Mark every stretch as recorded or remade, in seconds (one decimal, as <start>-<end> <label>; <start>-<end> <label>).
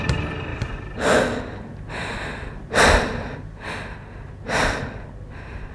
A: 0.0-5.7 recorded